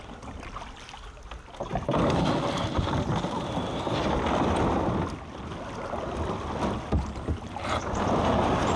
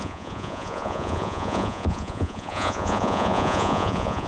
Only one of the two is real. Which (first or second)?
first